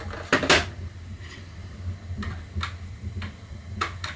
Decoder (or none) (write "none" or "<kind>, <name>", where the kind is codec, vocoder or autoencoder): none